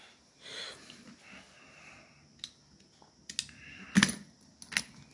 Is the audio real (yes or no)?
yes